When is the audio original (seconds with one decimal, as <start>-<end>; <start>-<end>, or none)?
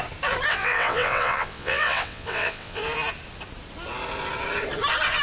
0.0-0.5; 2.8-5.2